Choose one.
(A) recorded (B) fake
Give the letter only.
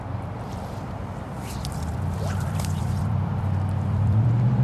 B